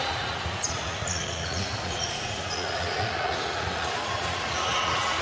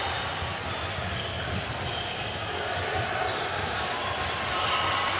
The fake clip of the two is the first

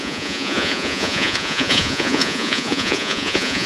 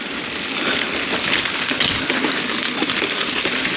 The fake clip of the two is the first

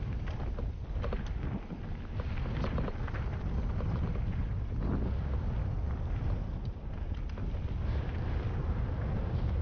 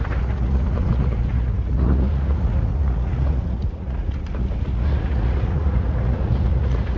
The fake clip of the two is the second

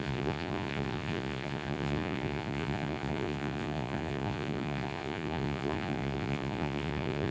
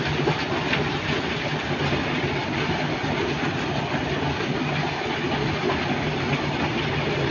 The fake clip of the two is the first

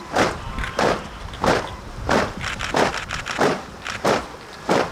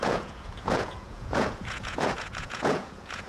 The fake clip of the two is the second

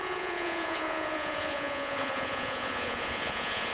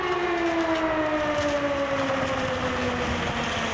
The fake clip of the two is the first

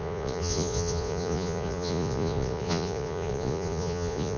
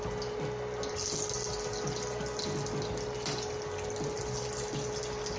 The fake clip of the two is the first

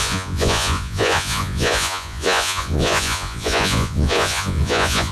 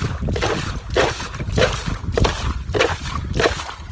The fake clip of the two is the first